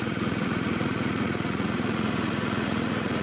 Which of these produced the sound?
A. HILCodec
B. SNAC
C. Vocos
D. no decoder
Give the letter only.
C